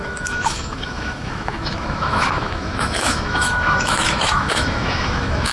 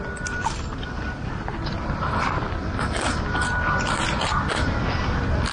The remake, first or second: first